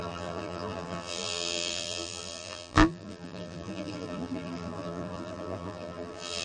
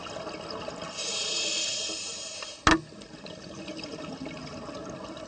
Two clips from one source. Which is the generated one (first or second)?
first